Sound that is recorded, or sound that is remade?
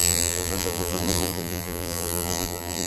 remade